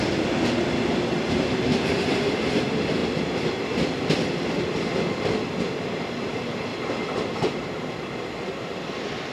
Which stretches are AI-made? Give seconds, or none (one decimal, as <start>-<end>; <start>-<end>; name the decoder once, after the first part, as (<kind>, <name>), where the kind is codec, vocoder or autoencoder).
6.7-7.7 (vocoder, BigVGAN v2)